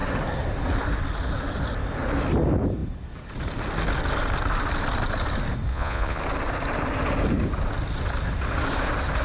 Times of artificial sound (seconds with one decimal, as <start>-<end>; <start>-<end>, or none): 5.7-6.2